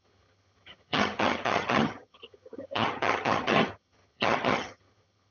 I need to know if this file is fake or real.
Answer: fake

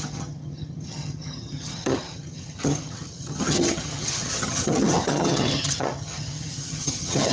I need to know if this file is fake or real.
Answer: fake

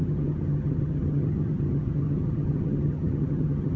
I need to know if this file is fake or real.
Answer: fake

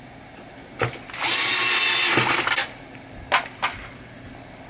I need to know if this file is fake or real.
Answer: real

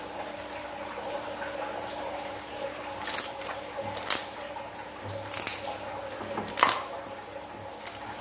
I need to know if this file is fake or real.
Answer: real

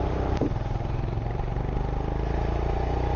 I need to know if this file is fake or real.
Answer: real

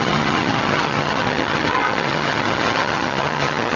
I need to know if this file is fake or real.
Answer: fake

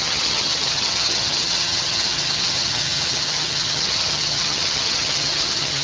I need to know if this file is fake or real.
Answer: fake